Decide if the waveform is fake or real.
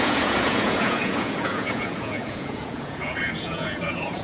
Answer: fake